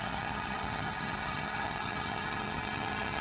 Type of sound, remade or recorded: remade